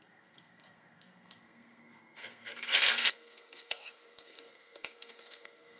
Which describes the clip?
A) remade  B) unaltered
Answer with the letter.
A